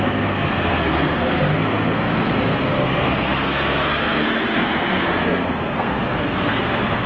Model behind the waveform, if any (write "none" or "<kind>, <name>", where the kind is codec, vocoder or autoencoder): codec, SNAC